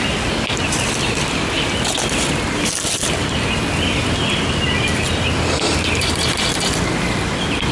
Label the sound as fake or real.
real